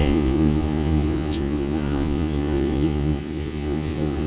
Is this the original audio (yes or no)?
no